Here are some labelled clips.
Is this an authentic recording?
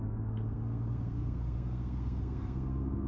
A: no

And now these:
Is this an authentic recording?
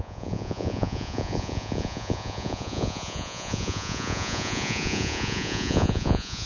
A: no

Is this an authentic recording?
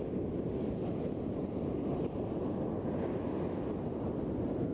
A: yes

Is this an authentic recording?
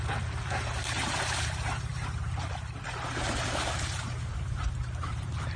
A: no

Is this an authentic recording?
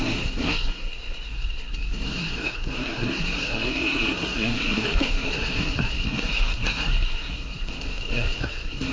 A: no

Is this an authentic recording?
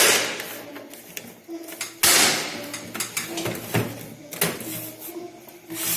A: yes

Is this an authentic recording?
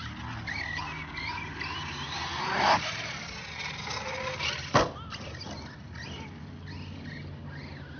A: yes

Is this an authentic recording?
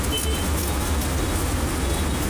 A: yes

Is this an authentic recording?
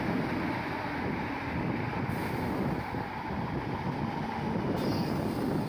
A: yes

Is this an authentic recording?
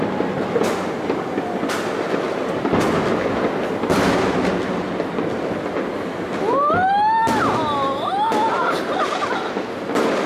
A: yes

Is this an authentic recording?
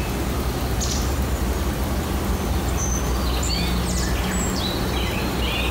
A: yes